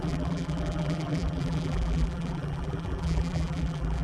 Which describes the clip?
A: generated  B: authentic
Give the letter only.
A